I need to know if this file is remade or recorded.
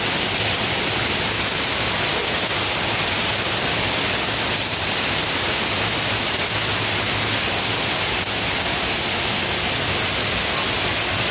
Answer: recorded